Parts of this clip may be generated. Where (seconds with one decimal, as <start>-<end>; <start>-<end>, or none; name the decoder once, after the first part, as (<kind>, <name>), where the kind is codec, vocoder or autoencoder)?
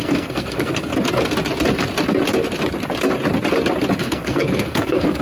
0.0-0.9 (codec, SNAC); 4.0-5.2